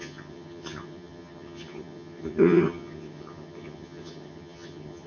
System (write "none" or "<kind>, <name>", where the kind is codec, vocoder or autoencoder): vocoder, HiFi-GAN